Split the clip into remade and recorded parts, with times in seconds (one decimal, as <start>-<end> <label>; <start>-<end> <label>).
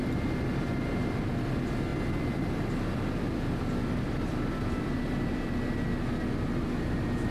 0.0-1.3 remade; 1.3-1.9 recorded; 1.9-5.5 remade; 5.5-7.3 recorded